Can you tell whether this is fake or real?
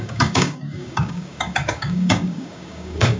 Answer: fake